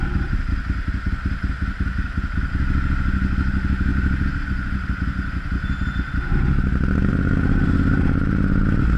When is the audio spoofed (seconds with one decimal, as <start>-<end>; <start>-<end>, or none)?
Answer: none